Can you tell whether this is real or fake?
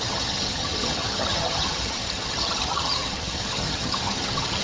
fake